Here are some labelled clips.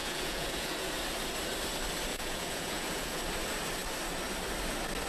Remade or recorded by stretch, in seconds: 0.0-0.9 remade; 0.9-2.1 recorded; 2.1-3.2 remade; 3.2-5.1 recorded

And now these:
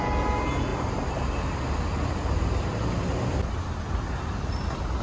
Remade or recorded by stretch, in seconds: 0.0-0.7 recorded; 0.7-1.4 remade; 1.4-5.0 recorded